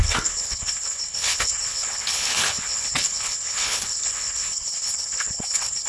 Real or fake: fake